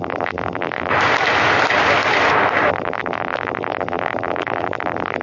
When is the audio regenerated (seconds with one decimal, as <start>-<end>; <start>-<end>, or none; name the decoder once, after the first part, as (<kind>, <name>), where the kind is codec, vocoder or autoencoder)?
0.0-0.9 (vocoder, BigVGAN v2); 2.7-5.2